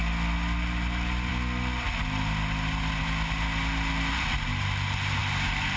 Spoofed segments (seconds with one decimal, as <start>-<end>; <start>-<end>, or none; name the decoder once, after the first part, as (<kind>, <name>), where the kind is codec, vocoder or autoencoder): none